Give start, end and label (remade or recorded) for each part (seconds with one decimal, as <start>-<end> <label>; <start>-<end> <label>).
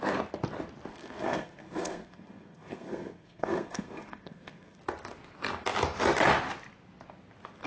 0.0-0.9 recorded; 0.9-4.8 remade; 4.8-7.7 recorded